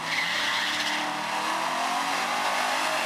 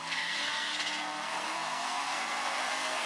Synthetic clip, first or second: second